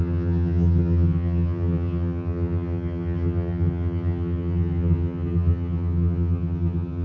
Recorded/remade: remade